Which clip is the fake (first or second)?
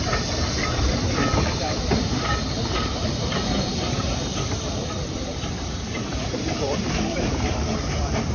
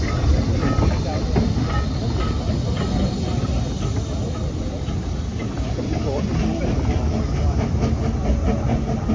first